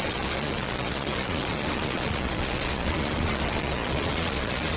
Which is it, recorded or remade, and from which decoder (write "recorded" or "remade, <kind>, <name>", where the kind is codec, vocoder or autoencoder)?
remade, vocoder, Vocos